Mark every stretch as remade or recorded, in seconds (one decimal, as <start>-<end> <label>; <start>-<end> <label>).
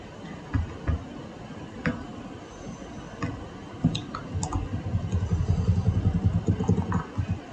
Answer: 0.0-7.5 recorded